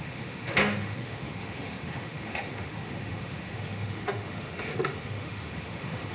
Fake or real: fake